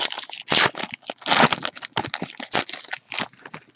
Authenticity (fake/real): real